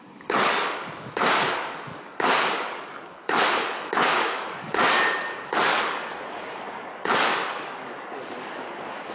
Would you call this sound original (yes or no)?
no